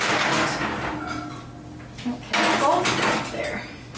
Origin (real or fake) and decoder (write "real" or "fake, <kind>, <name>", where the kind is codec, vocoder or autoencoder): real